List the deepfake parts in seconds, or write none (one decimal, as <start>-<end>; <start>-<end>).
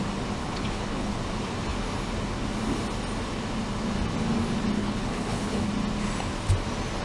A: 0.4-1.1; 4.8-5.7